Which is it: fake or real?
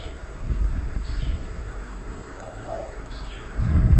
fake